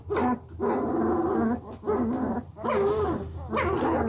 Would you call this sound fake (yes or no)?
no